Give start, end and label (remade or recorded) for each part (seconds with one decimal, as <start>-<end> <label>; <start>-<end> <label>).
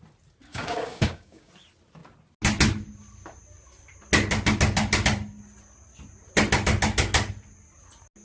0.0-0.5 recorded; 0.5-1.5 remade; 1.5-8.2 recorded